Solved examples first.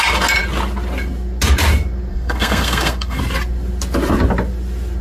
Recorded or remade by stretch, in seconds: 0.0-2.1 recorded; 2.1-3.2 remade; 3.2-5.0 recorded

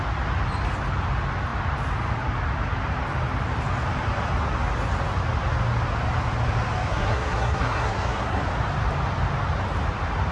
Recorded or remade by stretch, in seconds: 0.0-6.9 recorded; 6.9-8.4 remade; 8.4-10.3 recorded

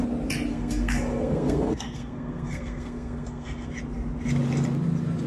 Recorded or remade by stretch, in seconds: 0.0-0.5 recorded; 0.5-3.7 remade; 3.7-5.3 recorded

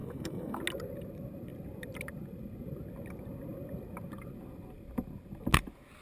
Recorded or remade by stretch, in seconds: 0.0-0.6 remade; 0.6-6.0 recorded